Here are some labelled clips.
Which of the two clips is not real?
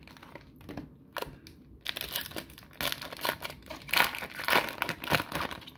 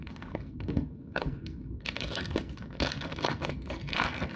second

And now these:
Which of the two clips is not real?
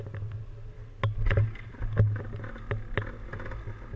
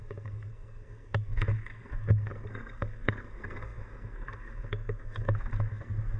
second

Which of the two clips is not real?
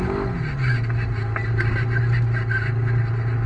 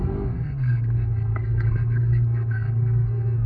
second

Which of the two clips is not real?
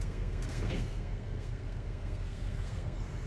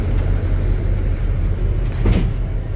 first